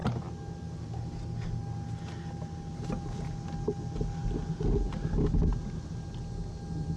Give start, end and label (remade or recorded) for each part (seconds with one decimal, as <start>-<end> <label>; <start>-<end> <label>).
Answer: 0.0-7.0 recorded